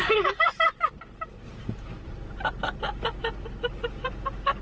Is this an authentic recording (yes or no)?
yes